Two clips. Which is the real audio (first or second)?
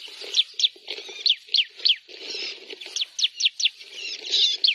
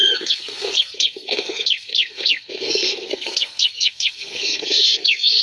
first